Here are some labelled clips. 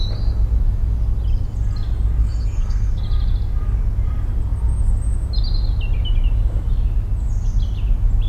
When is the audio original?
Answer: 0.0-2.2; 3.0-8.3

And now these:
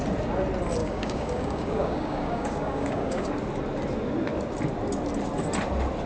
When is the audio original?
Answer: 0.0-0.8; 3.3-6.1

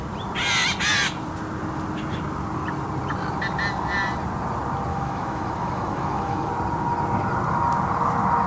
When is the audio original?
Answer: 0.0-4.9; 6.5-8.5

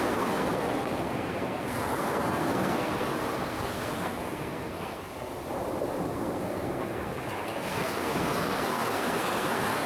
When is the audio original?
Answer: 5.3-6.0

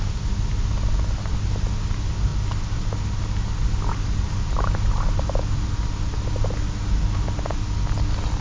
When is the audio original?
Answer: 0.0-8.4

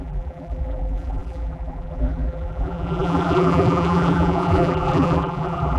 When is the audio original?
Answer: none

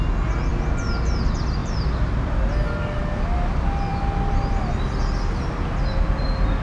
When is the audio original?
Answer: 0.0-6.6